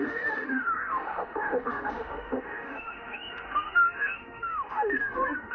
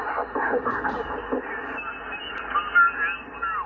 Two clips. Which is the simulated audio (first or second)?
first